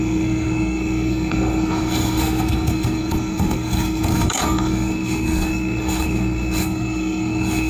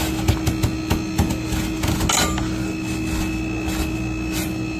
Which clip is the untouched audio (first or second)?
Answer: second